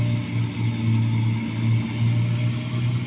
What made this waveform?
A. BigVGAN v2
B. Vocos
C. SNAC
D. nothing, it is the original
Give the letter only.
D